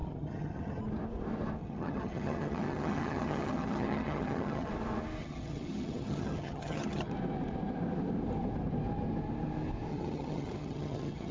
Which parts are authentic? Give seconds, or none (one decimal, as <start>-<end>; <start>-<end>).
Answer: 0.8-1.6; 4.7-5.2; 7.1-9.9